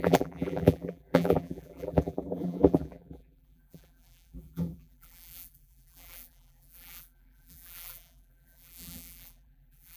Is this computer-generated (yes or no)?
yes